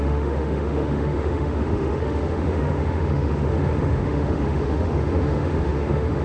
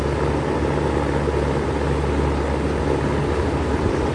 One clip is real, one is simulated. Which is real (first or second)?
second